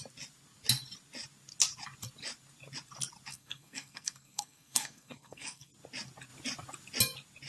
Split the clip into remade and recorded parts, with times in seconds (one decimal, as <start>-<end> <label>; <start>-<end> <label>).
0.0-3.3 recorded; 3.3-5.7 remade; 5.7-7.5 recorded